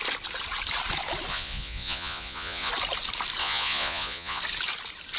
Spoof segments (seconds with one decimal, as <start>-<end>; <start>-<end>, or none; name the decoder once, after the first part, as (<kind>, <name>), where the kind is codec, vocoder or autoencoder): 1.3-2.7 (vocoder, Vocos); 3.4-4.4